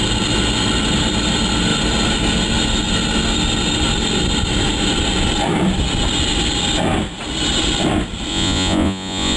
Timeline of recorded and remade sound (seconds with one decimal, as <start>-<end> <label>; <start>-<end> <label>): 0.0-8.3 recorded; 8.3-9.4 remade